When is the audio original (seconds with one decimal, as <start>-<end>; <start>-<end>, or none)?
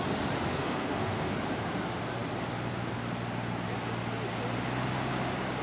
0.0-0.5; 1.3-5.6